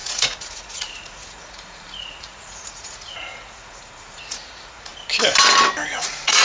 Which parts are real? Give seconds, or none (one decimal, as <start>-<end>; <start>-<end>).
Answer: 4.9-5.9